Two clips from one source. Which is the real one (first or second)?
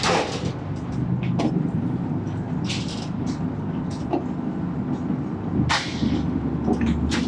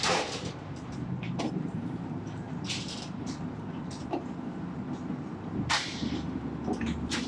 first